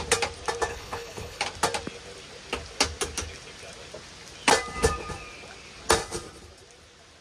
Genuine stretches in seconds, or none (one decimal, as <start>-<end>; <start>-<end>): 0.0-0.7; 1.4-7.2